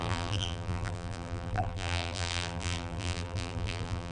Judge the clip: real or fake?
fake